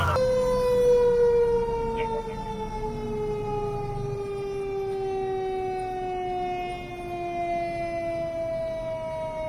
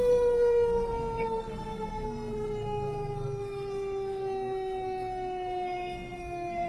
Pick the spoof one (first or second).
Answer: second